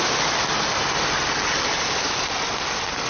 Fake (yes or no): no